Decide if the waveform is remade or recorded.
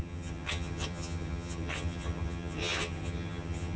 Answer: remade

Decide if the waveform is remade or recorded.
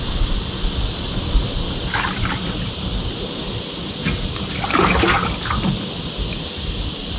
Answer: recorded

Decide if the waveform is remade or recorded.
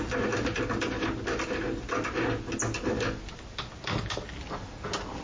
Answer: recorded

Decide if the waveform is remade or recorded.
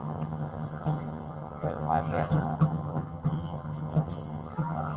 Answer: remade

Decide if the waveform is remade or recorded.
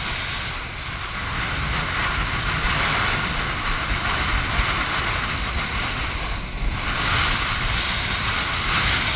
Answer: recorded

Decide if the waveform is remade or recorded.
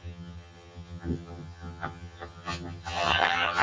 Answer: remade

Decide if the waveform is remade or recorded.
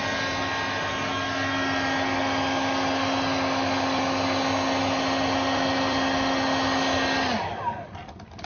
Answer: recorded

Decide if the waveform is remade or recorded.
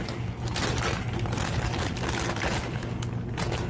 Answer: recorded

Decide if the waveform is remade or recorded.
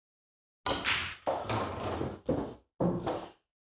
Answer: recorded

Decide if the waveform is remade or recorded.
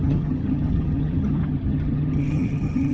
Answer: remade